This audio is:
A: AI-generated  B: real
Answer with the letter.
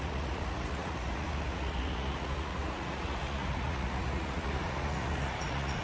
A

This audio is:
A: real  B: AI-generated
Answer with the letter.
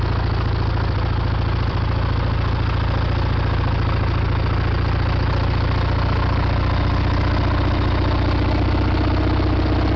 A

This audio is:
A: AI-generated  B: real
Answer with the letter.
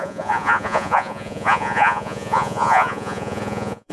A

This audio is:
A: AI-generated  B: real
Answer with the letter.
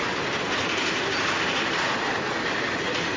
B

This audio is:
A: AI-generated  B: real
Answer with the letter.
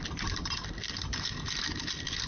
B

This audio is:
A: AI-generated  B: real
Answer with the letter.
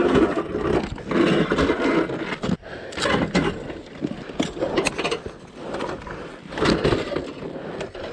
B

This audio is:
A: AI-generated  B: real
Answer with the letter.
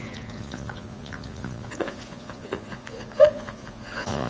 A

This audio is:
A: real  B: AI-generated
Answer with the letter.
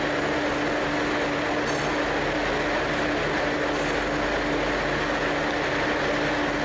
A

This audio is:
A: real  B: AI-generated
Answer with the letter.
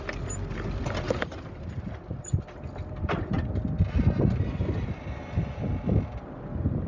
A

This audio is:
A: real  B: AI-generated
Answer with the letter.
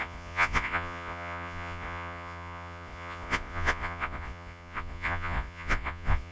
B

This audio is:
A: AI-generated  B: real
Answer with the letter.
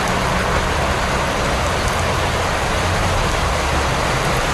B